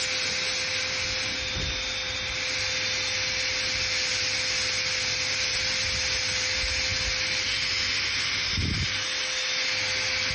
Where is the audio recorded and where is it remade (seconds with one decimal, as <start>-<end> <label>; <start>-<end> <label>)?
0.0-10.3 recorded